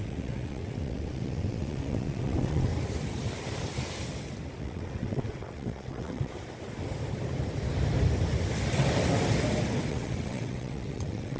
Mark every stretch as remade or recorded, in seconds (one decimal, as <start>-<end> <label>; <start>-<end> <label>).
0.0-2.7 remade; 2.7-4.6 recorded; 4.6-6.3 remade; 6.3-9.9 recorded; 9.9-11.4 remade